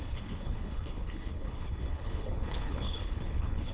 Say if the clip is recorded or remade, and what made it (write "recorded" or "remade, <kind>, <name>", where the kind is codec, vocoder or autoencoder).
remade, codec, HILCodec